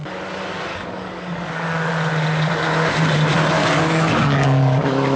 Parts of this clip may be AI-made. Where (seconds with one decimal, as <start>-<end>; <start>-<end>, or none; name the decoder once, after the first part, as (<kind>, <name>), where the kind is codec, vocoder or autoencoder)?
0.7-1.9 (codec, DAC); 3.6-5.2